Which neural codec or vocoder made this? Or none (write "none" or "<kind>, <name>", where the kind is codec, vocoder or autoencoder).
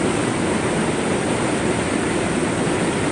none